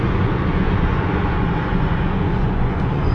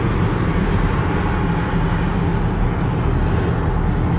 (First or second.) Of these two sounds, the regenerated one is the first